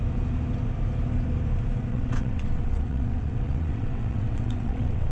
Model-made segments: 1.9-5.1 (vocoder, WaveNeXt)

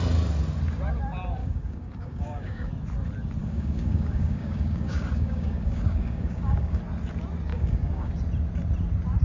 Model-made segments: 1.4-2.7 (codec, DAC); 3.4-6.8; 7.5-8.1

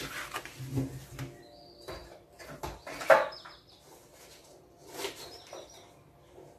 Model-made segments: 4.1-6.6 (vocoder, BigVGAN v2)

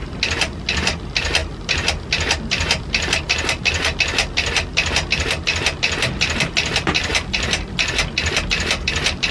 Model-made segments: none

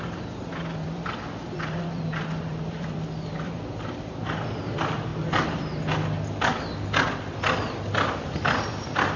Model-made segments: 0.0-5.1 (vocoder, BigVGAN v2); 7.2-9.2

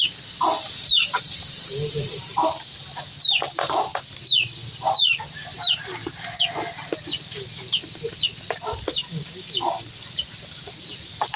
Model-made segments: 0.0-6.0 (vocoder, BigVGAN v2); 7.0-11.4

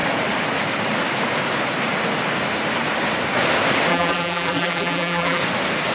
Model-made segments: 3.9-5.4 (vocoder, BigVGAN v2)